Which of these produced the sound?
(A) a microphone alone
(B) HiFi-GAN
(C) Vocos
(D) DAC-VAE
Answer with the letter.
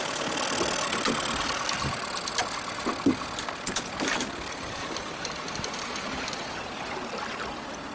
A